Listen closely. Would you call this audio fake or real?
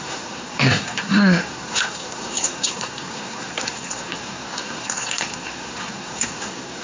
fake